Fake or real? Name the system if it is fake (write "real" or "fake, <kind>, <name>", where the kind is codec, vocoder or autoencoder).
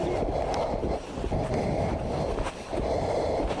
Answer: real